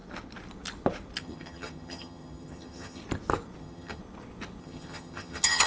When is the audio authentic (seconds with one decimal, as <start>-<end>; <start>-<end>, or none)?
0.0-1.2; 3.0-3.6; 4.0-4.6

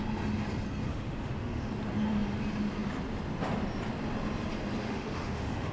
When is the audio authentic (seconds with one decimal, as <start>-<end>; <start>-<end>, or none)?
0.0-0.9; 1.7-4.8

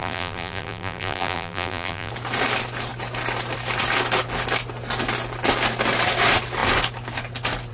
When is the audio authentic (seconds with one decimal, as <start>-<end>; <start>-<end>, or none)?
2.1-7.7

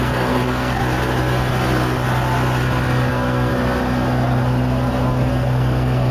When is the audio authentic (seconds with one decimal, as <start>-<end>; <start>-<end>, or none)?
0.8-3.1; 3.5-5.3

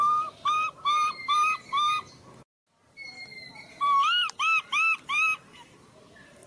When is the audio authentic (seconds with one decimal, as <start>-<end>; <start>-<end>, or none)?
0.0-6.5